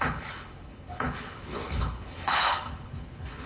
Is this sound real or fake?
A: fake